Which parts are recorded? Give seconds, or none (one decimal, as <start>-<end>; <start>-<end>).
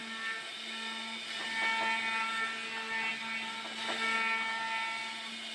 0.0-5.5